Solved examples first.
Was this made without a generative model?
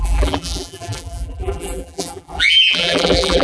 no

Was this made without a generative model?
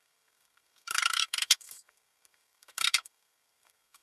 no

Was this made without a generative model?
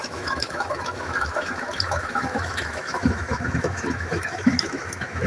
no